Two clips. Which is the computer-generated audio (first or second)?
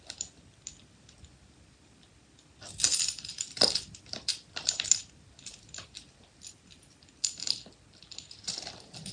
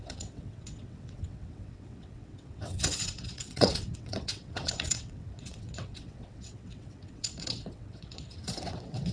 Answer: second